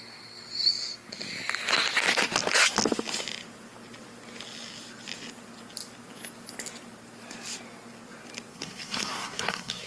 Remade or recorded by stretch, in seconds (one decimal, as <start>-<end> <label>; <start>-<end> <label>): 0.0-8.5 recorded; 8.5-9.9 remade